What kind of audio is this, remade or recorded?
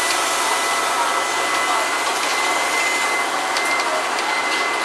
recorded